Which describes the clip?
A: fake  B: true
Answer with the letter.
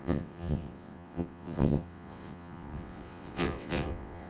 A